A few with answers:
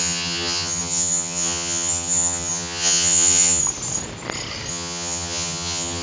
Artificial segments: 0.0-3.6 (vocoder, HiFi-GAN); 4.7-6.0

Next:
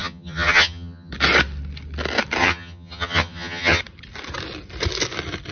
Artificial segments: 0.0-1.1 (vocoder, HiFi-GAN); 2.4-3.8

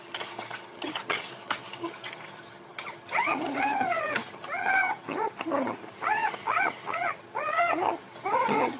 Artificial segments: 0.0-8.8 (vocoder, HiFi-GAN)

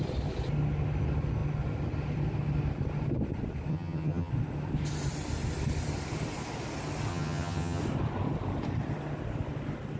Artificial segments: 3.7-4.3 (vocoder, HiFi-GAN); 7.1-7.8

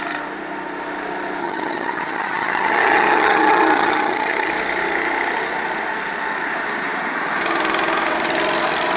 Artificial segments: 1.4-4.5 (vocoder, HiFi-GAN)

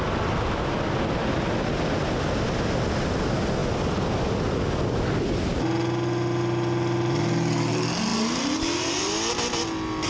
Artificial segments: none

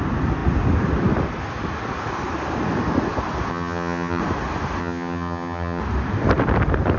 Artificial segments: 3.5-4.2 (vocoder, HiFi-GAN); 4.8-5.8